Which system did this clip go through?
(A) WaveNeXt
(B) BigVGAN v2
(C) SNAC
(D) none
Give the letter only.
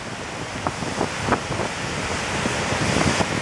D